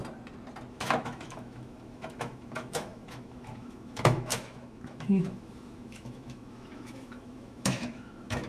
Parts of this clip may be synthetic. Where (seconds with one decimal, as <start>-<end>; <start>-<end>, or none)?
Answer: 0.7-8.5